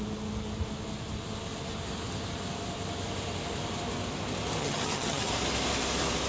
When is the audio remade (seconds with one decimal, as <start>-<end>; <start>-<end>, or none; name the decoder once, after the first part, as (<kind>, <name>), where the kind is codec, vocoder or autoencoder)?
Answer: 4.6-5.3 (vocoder, HiFi-GAN)